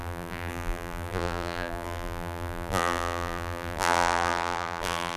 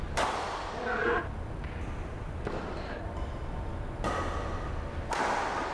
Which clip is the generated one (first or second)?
first